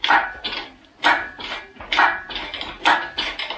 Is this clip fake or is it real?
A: real